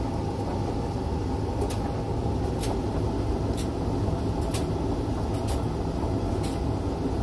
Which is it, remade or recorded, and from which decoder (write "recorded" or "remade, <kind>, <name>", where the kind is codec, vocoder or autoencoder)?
recorded